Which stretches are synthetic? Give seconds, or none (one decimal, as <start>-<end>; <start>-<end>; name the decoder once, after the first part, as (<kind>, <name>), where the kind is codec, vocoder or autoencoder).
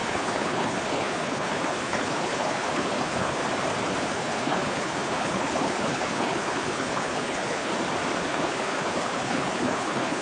0.0-3.4 (codec, HILCodec); 4.0-7.7; 8.2-10.2